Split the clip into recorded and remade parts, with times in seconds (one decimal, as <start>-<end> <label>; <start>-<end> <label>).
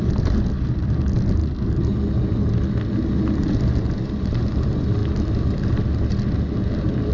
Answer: 0.0-7.1 recorded